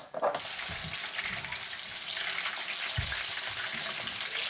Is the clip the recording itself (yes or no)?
yes